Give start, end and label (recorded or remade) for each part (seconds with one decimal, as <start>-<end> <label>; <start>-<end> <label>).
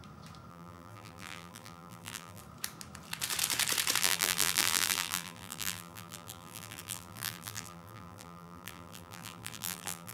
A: 0.0-0.5 recorded; 0.5-2.4 remade; 2.4-4.0 recorded; 4.0-10.1 remade